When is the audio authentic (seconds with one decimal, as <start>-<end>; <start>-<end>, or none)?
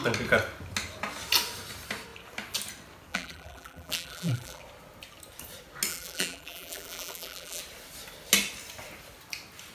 0.0-3.1; 4.6-5.9; 7.6-9.7